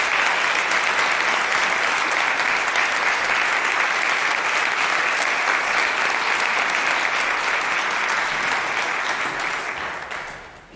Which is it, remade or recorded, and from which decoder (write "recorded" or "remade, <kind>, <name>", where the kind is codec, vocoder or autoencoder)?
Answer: recorded